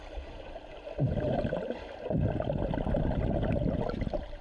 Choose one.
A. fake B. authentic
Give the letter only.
B